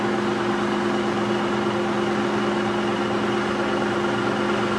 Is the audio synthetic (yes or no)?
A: no